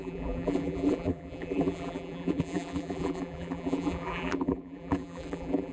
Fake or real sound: fake